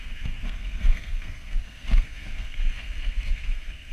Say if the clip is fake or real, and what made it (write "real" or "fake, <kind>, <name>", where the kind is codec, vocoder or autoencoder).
fake, codec, SNAC